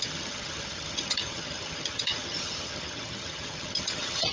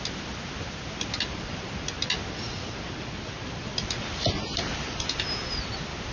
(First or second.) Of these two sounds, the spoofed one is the first